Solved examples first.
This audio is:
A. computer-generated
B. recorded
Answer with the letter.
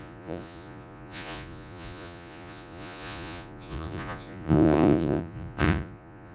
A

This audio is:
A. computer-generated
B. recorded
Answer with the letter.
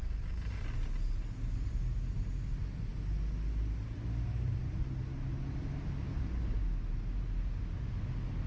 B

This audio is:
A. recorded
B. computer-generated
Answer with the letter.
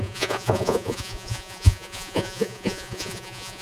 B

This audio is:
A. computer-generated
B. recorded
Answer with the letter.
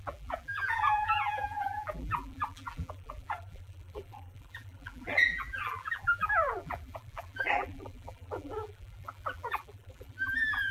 A